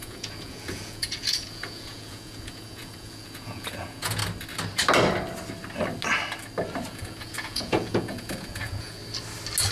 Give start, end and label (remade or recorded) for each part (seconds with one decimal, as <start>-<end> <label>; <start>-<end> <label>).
0.0-4.2 remade; 4.2-6.9 recorded; 6.9-9.0 remade; 9.0-9.7 recorded